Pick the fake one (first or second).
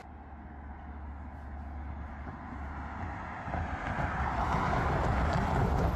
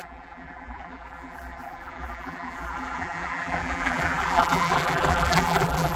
second